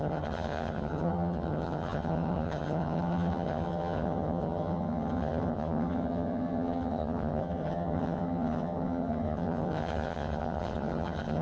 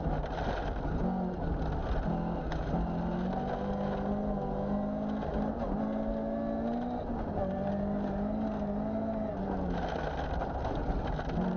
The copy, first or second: first